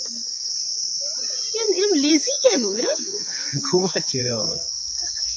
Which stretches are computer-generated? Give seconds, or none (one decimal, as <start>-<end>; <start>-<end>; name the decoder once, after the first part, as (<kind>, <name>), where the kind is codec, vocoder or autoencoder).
0.0-0.5 (codec, SNAC); 2.1-5.4